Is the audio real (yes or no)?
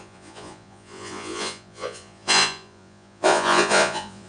no